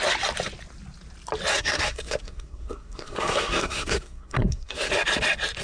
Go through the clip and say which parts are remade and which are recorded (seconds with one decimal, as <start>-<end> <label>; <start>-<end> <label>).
0.0-1.5 recorded; 1.5-4.9 remade; 4.9-5.6 recorded